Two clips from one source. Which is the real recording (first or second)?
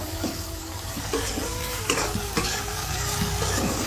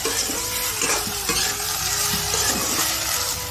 second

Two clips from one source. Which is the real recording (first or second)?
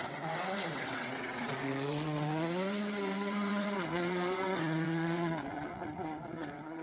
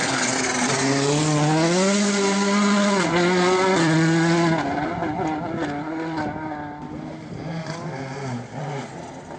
second